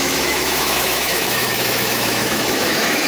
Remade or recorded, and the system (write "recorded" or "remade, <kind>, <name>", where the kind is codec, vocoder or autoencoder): remade, autoencoder, DAC-VAE